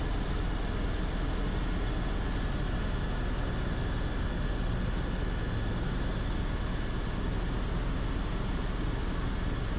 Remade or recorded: recorded